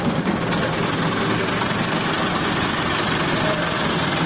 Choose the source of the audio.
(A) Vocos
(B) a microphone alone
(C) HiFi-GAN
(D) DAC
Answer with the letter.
B